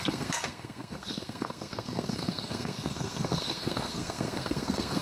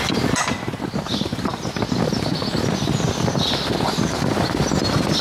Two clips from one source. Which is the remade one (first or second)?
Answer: first